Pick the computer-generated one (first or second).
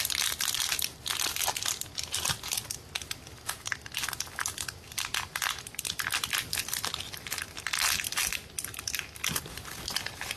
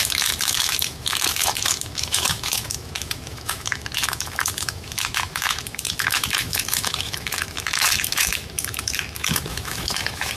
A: second